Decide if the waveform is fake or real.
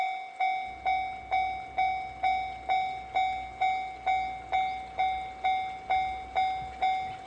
real